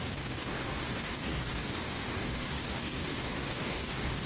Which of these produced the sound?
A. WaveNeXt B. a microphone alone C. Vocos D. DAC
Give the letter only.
D